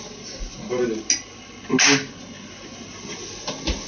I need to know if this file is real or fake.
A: real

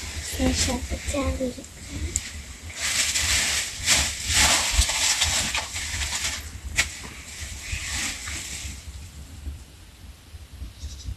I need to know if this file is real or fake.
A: fake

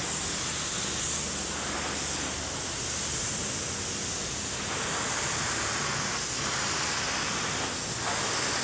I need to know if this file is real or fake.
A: real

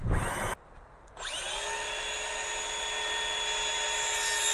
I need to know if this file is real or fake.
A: real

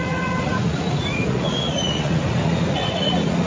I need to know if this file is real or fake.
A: fake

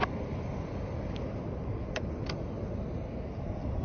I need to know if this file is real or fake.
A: real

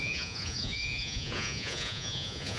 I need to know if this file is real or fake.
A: fake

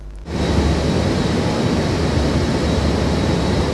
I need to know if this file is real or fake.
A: real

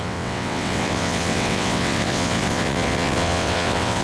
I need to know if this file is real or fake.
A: fake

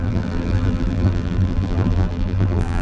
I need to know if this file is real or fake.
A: fake